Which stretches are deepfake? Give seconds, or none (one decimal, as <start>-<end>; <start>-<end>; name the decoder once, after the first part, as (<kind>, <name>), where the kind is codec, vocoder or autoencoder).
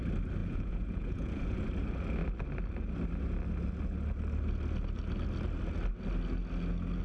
0.4-1.6 (vocoder, Vocos)